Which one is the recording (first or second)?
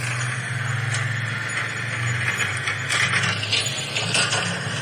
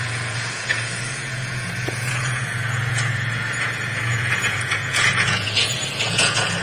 first